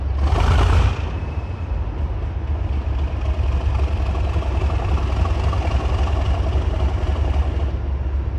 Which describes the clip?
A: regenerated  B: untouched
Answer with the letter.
B